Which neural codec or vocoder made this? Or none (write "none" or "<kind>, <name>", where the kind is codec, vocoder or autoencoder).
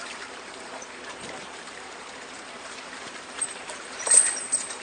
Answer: vocoder, BigVGAN v2